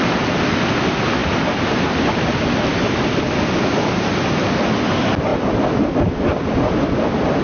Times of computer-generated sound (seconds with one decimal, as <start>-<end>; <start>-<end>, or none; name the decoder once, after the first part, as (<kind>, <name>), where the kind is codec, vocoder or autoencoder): none